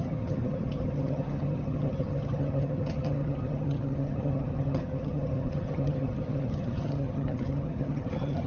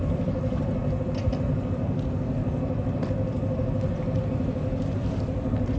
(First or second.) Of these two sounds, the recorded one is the second